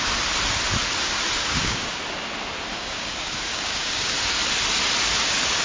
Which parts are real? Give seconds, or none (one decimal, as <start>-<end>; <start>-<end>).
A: 0.0-1.4; 2.0-2.7; 4.1-5.6